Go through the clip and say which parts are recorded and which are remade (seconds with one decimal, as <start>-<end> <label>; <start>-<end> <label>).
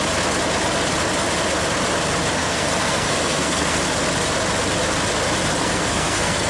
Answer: 0.0-2.4 recorded; 2.4-3.8 remade; 3.8-5.6 recorded; 5.6-6.5 remade